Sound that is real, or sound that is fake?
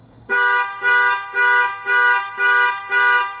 fake